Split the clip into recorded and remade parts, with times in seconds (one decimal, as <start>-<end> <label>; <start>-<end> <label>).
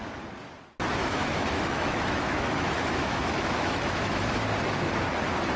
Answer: 0.0-1.0 recorded; 1.0-4.4 remade; 4.4-5.6 recorded